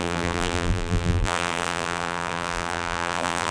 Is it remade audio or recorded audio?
remade